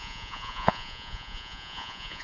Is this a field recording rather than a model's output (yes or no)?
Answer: no